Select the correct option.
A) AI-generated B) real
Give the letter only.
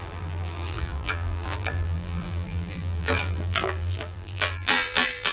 A